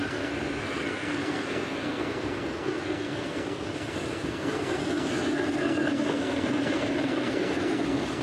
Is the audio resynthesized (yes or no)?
yes